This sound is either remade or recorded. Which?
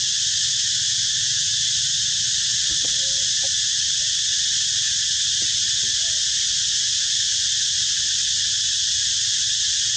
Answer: recorded